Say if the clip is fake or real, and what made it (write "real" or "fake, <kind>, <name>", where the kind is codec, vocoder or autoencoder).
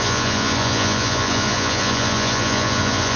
fake, vocoder, Vocos